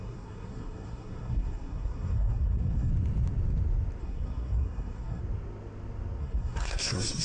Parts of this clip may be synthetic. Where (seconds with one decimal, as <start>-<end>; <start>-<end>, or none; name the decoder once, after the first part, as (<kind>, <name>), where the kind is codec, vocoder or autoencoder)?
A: 0.0-2.9 (codec, SNAC); 4.0-5.2; 6.2-7.2